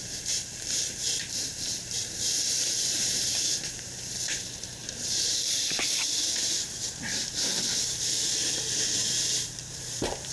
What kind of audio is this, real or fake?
fake